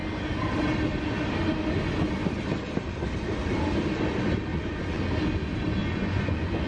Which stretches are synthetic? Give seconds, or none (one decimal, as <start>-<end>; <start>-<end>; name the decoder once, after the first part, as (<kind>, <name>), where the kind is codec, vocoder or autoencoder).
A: 4.5-5.0 (vocoder, Vocos); 5.8-6.7